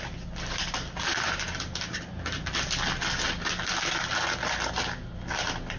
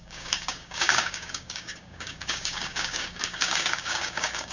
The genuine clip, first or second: first